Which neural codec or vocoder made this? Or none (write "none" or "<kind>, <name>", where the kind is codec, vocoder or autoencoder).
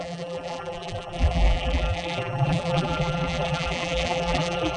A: vocoder, BigVGAN v2